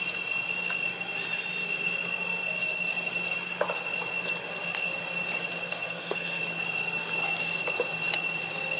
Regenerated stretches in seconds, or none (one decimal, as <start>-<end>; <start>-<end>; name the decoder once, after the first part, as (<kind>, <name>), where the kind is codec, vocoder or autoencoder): 5.7-6.4 (codec, SNAC)